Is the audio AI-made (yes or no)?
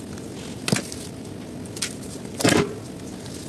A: no